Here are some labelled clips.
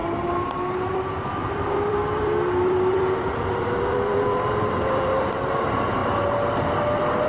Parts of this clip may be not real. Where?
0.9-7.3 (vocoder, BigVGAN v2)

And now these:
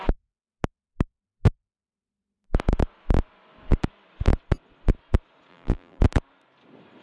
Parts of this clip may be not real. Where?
5.5-6.0 (vocoder, BigVGAN v2)

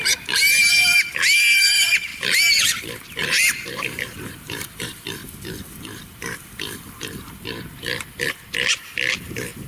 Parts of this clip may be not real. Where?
2.1-2.8 (vocoder, BigVGAN v2); 3.2-4.8